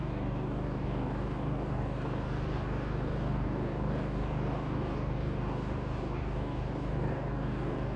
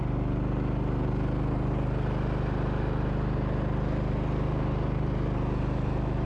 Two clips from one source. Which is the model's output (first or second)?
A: first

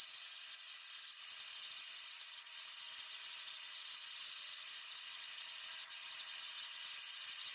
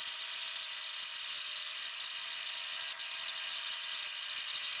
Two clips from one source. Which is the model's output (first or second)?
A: first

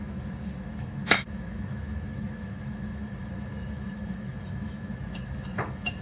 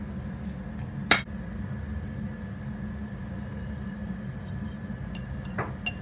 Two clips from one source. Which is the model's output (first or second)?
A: first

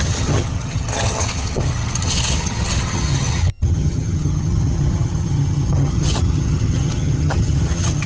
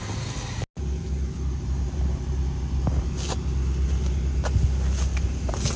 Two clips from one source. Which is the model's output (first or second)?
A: first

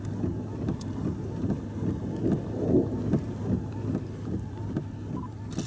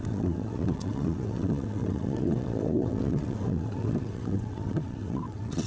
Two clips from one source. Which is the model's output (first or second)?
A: second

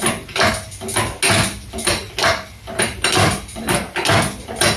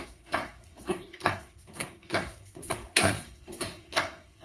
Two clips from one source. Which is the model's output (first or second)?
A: second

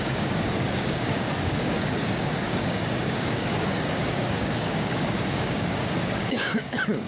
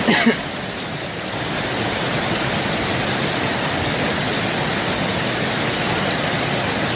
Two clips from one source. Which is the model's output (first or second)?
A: first